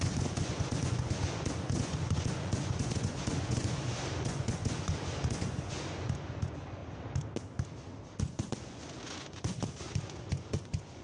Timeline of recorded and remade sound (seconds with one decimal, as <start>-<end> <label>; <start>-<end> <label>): 0.0-6.8 remade; 6.8-8.2 recorded; 8.2-11.0 remade